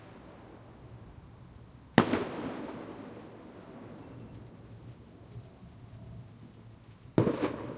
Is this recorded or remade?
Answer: recorded